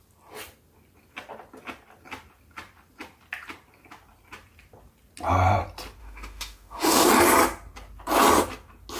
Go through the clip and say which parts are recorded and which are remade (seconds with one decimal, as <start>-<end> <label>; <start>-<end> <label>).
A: 0.0-6.0 recorded; 6.0-7.1 remade; 7.1-9.0 recorded